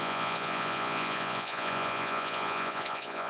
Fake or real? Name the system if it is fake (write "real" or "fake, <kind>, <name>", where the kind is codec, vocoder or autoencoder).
fake, vocoder, Vocos